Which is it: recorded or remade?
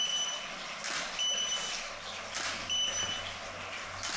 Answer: recorded